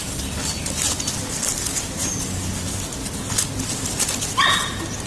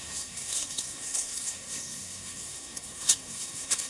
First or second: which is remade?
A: second